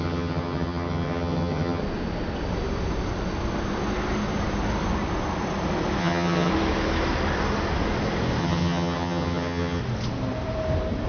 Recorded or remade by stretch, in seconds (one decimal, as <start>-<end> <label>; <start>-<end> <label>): 0.0-1.8 remade; 1.8-6.0 recorded; 6.0-6.5 remade; 6.5-8.4 recorded; 8.4-9.8 remade; 9.8-11.1 recorded